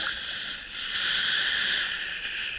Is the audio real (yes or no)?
yes